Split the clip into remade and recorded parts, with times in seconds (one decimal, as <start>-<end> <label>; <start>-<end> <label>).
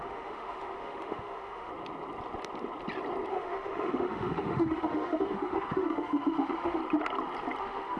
0.0-1.7 remade; 1.7-3.3 recorded; 3.3-6.8 remade; 6.8-7.6 recorded; 7.6-8.0 remade